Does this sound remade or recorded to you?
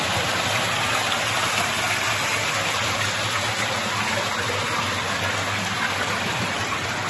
recorded